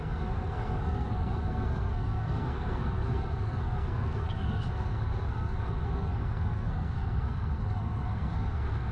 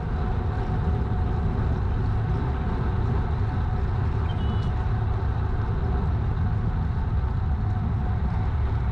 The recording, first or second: second